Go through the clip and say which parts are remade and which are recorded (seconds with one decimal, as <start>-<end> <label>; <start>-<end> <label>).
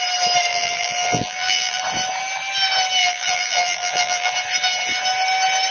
0.0-0.5 recorded; 0.5-1.8 remade; 1.8-3.0 recorded; 3.0-4.3 remade; 4.3-5.7 recorded